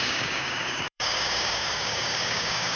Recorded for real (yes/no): no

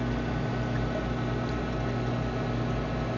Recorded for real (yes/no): yes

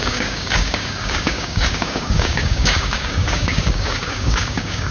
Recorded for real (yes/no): no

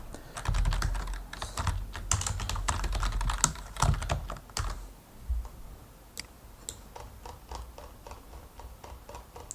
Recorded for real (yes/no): yes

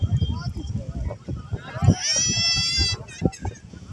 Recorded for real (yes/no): yes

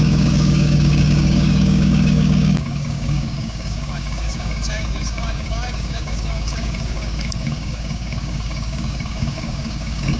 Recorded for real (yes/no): no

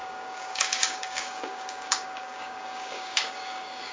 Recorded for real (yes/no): no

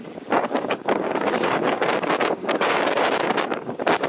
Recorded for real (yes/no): no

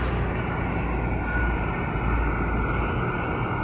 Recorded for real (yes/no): yes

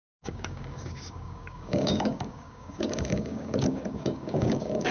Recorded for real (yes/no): no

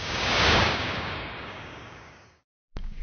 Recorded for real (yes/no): no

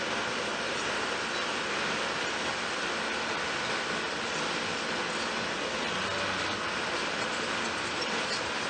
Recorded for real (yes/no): yes